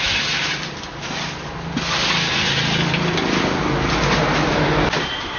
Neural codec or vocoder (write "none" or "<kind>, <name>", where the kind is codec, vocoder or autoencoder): none